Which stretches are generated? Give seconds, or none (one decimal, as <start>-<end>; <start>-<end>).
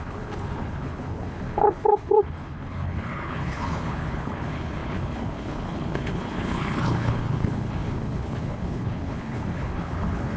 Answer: 0.0-10.4